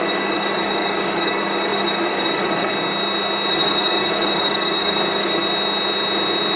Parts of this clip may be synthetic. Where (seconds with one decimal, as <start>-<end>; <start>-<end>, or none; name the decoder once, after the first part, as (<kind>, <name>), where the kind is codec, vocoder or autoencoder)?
0.0-2.7 (codec, DAC); 3.5-5.4